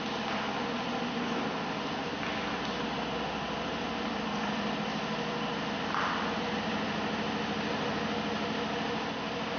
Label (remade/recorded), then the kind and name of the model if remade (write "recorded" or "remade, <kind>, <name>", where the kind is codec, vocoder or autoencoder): recorded